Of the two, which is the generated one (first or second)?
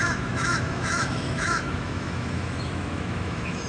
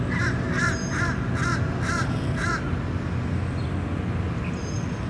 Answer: first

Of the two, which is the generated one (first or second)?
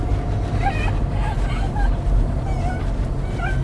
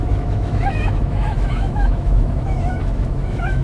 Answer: second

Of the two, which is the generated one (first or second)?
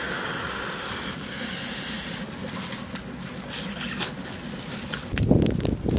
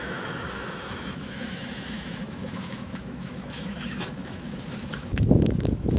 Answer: second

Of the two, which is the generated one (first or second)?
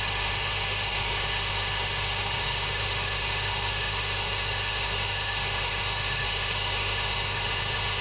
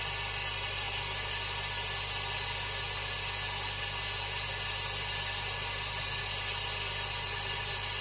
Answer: first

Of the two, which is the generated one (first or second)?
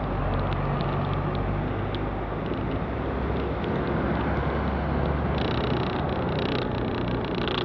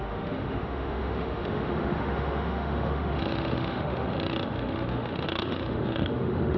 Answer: second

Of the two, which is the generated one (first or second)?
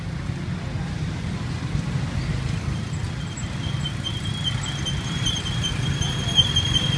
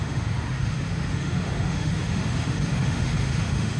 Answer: second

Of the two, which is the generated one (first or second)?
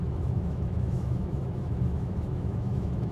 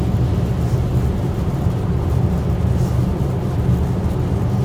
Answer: first